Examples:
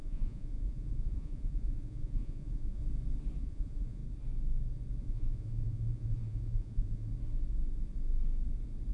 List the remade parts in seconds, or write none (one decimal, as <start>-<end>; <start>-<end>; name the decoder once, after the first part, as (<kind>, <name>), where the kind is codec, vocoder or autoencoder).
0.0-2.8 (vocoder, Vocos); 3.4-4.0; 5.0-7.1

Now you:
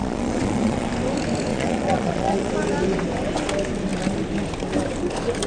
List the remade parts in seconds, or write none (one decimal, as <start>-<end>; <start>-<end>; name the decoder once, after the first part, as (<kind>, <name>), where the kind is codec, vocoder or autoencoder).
0.0-0.9 (vocoder, Vocos); 1.5-2.5

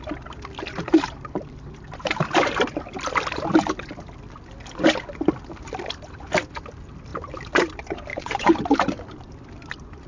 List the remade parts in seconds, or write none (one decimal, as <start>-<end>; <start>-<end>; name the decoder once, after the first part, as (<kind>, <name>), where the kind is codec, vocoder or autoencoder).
8.1-8.6 (vocoder, Vocos)

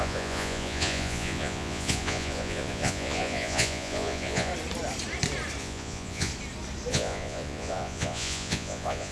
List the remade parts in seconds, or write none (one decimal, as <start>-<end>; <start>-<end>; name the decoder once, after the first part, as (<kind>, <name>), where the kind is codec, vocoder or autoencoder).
0.0-4.5 (vocoder, Vocos); 5.6-6.3; 6.9-9.1

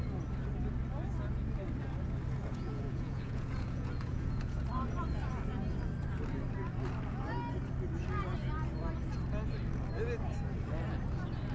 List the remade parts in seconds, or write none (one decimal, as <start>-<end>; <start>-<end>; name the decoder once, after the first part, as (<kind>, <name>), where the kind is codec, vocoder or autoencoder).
2.5-4.6 (vocoder, Vocos)

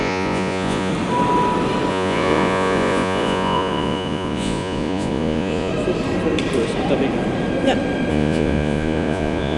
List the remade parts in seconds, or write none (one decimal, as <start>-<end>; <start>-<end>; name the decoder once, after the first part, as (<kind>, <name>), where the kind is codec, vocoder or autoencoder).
0.0-0.9 (vocoder, Vocos); 1.9-5.7; 8.1-9.6

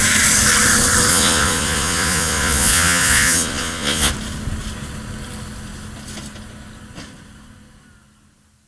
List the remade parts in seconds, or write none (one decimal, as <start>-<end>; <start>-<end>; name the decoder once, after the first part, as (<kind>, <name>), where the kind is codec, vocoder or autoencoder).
1.1-4.1 (vocoder, Vocos)